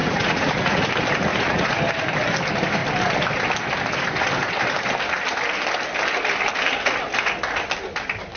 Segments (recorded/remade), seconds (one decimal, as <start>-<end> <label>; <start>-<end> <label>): 0.0-0.9 remade; 0.9-1.3 recorded; 1.3-1.8 remade; 1.8-8.4 recorded